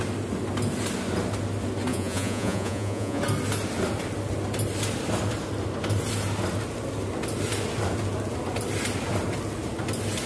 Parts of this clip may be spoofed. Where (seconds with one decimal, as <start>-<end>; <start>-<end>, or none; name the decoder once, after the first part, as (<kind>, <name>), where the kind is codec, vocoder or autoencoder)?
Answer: 1.9-3.2 (vocoder, Vocos)